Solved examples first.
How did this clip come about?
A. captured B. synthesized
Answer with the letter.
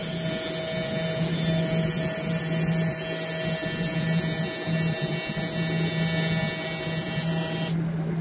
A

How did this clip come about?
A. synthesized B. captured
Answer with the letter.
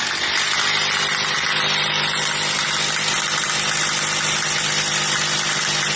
B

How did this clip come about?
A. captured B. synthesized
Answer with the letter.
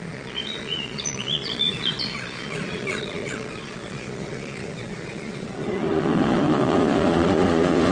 B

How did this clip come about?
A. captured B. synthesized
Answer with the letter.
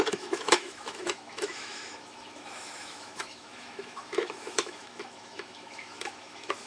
B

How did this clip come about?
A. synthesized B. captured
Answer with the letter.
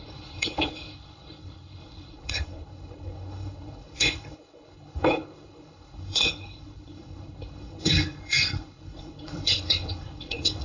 A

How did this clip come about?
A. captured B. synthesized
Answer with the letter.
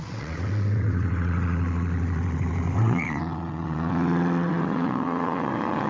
B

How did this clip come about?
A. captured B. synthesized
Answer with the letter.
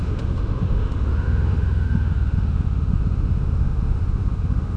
B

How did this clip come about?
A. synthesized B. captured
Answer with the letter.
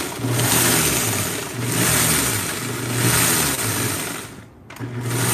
B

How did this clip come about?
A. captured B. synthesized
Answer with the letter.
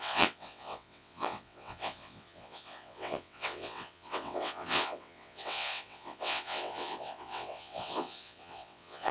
B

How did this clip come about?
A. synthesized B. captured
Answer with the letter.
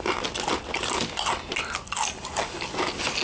B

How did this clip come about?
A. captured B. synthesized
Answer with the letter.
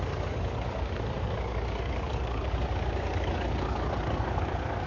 B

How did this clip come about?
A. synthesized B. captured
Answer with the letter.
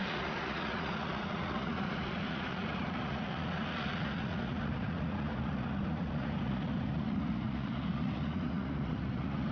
A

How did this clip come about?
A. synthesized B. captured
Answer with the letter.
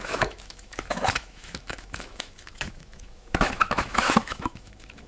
A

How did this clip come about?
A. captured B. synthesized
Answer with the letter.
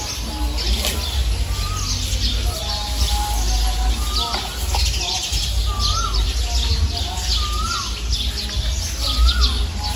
A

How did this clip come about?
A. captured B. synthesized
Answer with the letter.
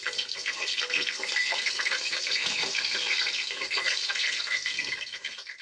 B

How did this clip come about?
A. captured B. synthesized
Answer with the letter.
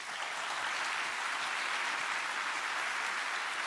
A